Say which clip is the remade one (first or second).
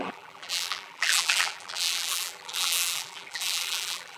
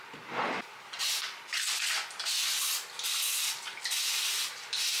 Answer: first